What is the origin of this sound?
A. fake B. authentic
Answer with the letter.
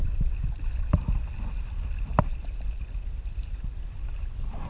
B